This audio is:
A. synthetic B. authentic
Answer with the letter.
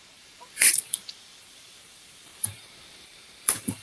A